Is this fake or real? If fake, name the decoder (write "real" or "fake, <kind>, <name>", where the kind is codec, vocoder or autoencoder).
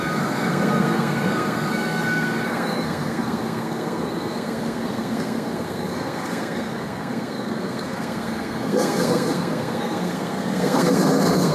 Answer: fake, codec, SNAC